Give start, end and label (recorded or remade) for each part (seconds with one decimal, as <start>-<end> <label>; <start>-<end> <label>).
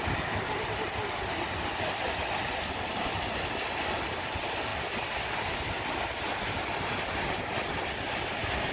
0.0-8.7 recorded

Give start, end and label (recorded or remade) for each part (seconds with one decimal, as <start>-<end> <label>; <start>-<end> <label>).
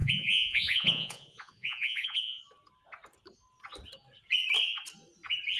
0.0-2.4 remade; 2.4-5.6 recorded